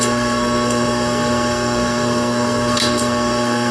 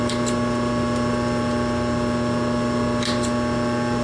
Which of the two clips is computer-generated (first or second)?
first